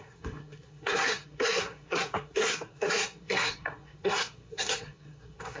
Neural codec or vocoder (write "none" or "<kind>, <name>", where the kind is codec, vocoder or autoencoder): codec, SNAC